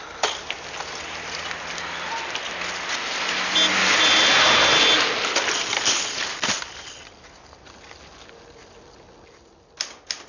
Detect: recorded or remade recorded